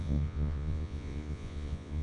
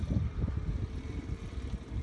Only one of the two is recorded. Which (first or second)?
second